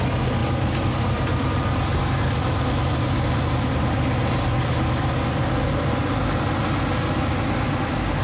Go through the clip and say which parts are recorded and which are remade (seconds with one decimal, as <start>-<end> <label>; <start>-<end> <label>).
0.0-8.2 recorded